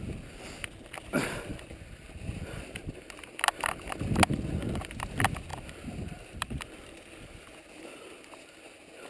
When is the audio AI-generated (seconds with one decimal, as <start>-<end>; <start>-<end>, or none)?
5.5-6.6